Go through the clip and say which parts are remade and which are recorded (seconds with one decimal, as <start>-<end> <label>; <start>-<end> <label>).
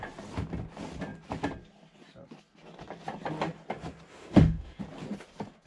0.0-4.1 recorded; 4.1-4.8 remade; 4.8-5.7 recorded